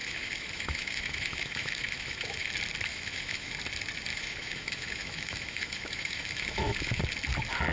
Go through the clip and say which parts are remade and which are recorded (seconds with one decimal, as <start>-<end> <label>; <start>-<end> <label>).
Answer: 0.0-2.5 remade; 2.5-2.9 recorded; 2.9-3.5 remade; 3.5-4.1 recorded; 4.1-7.0 remade; 7.0-7.7 recorded